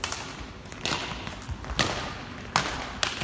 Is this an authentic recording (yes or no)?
yes